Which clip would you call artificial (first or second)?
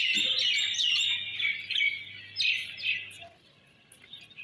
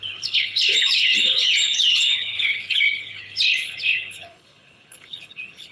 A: second